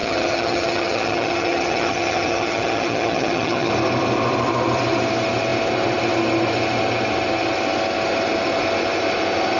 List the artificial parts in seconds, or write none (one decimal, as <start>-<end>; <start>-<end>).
0.0-3.7